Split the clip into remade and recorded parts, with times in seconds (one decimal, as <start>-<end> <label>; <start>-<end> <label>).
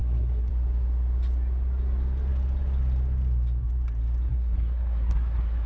0.0-0.5 remade; 0.5-4.3 recorded; 4.3-5.7 remade